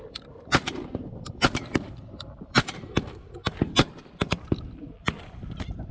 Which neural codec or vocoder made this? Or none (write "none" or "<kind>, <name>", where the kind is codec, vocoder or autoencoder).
vocoder, BigVGAN v2